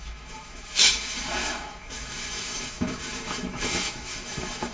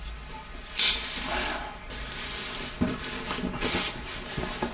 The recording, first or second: second